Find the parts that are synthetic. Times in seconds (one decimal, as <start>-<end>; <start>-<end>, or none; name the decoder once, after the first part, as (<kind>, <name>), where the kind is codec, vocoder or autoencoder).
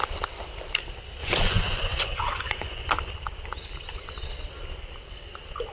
1.2-2.9 (vocoder, Vocos)